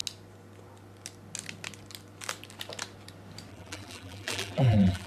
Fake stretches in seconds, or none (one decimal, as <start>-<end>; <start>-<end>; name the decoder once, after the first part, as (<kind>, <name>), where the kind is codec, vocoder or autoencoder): 3.5-5.1 (vocoder, BigVGAN v2)